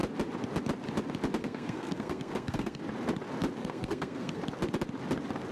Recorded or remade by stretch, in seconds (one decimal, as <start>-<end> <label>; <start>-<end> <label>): 0.0-1.4 recorded; 1.4-2.8 remade; 2.8-3.6 recorded; 3.6-4.4 remade; 4.4-5.5 recorded